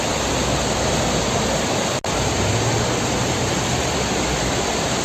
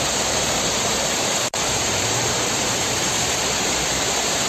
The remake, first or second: second